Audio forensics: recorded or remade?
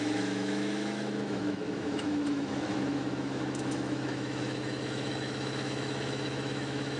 remade